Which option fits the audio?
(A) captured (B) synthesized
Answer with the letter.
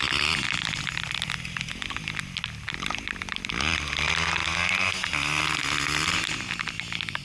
A